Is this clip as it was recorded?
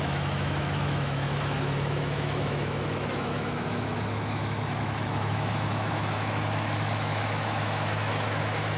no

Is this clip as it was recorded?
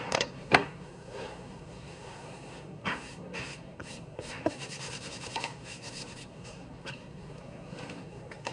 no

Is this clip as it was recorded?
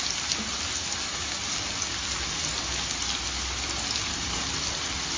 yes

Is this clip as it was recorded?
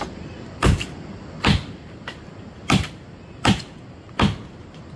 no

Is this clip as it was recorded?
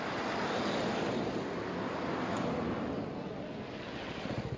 yes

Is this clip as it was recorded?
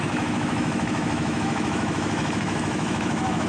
no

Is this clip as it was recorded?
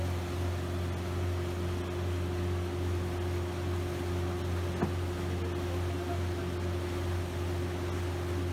yes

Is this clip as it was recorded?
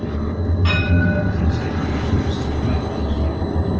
yes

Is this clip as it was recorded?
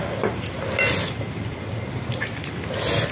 yes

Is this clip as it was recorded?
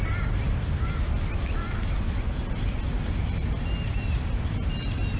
yes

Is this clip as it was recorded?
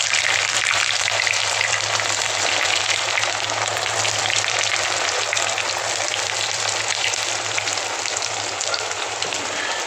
yes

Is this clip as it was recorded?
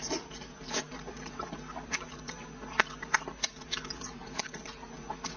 no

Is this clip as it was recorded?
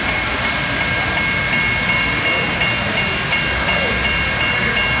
yes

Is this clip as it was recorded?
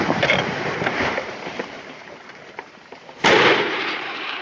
no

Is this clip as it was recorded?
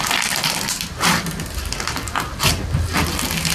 yes